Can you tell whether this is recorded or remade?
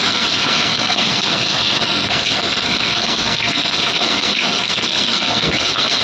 remade